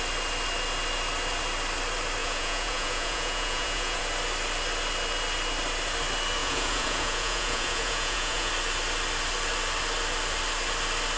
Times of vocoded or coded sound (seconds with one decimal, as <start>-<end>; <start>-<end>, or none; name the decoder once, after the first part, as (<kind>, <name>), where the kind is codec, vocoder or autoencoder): 2.2-4.0 (vocoder, Vocos); 6.4-8.5